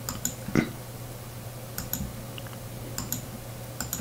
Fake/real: real